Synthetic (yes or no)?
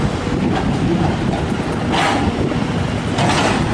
no